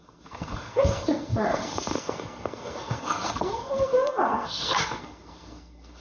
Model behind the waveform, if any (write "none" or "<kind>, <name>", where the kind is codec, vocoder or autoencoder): codec, SNAC